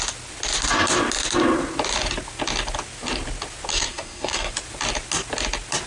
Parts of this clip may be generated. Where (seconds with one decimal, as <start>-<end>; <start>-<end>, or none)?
3.7-4.5